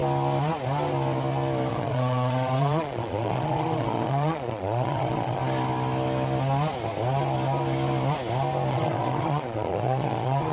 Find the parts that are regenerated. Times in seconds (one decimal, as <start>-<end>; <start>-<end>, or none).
1.7-5.4; 8.7-10.5